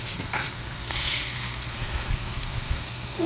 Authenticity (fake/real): fake